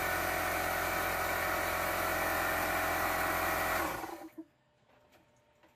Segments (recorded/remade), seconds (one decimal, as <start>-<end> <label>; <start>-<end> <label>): 0.0-4.1 recorded; 4.1-4.9 remade; 4.9-5.8 recorded